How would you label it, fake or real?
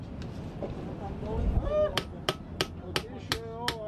real